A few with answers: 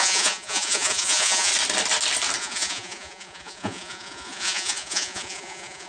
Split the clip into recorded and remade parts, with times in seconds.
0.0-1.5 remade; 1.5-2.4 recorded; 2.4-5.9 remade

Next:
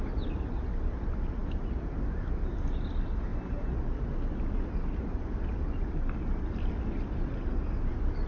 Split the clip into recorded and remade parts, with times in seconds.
0.0-8.3 recorded

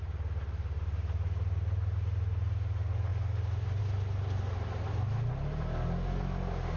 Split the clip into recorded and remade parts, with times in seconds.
0.0-6.8 recorded